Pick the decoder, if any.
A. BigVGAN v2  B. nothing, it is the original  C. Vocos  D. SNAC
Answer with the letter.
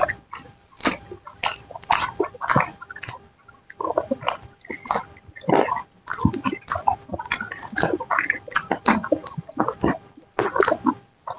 B